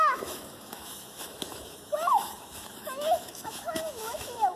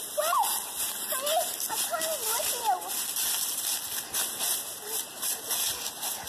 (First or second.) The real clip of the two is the second